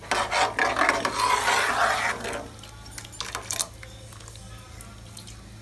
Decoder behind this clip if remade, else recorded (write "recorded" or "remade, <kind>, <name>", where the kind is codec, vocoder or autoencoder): recorded